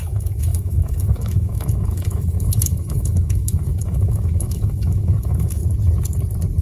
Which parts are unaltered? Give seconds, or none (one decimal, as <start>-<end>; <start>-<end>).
5.6-6.6